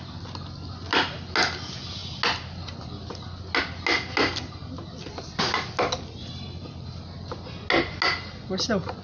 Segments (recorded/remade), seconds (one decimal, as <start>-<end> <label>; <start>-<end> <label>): 0.0-9.0 recorded